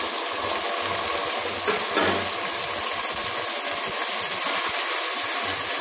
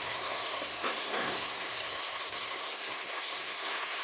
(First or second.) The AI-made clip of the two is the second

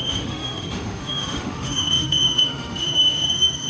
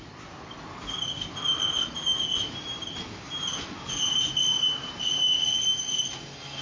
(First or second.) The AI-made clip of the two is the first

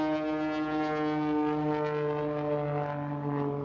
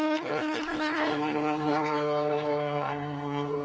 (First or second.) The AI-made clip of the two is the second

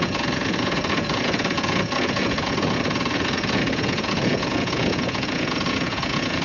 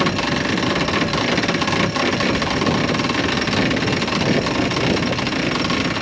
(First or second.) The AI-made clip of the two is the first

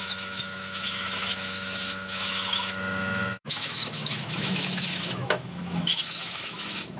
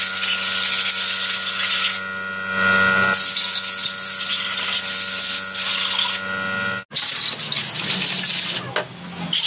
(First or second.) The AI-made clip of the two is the first